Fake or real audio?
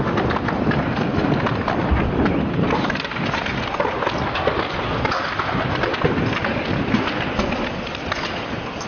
real